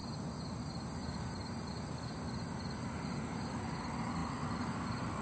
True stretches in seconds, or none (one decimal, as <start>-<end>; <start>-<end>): 0.0-1.0; 1.7-5.2